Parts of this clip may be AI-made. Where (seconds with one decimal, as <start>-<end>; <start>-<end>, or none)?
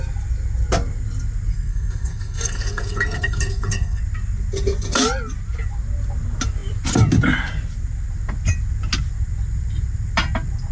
1.5-4.0